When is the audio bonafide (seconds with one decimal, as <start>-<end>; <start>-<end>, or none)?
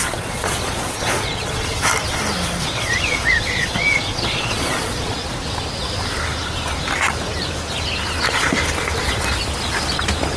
1.9-2.6; 5.2-10.4